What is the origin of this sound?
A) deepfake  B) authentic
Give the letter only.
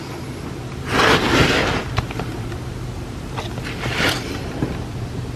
B